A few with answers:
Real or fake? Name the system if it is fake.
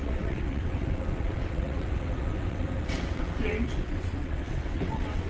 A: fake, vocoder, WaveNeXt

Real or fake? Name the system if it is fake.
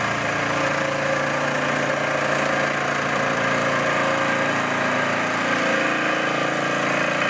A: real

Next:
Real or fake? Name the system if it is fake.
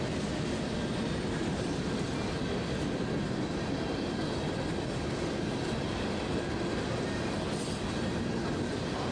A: real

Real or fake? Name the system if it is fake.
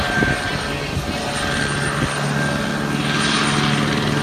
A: real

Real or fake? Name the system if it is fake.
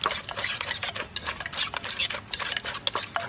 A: real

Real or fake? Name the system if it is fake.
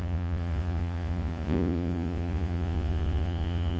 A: fake, vocoder, Vocos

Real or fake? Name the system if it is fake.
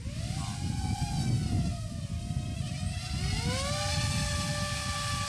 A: real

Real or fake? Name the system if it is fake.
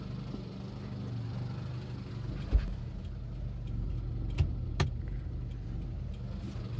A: real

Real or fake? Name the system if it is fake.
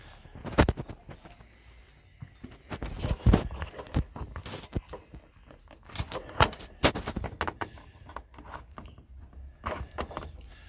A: real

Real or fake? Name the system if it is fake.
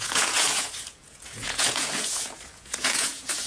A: fake, vocoder, Vocos